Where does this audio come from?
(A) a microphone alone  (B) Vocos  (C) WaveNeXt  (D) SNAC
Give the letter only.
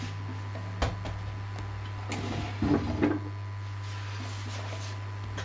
A